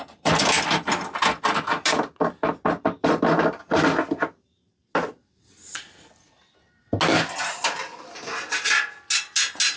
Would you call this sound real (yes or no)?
yes